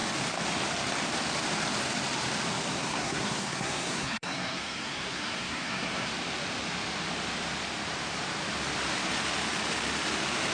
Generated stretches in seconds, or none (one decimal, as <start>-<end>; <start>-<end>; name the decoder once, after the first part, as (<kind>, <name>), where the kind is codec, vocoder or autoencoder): 2.7-6.1 (codec, SNAC)